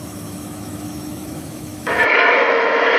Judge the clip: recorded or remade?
remade